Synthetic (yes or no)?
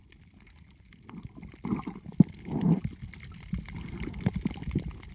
no